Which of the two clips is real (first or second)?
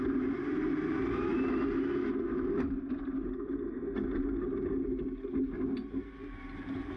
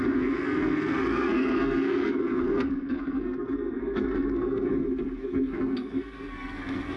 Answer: first